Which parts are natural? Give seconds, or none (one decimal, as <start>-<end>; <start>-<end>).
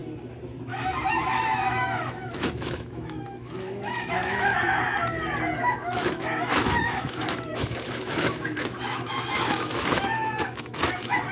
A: 0.0-0.6; 4.5-5.6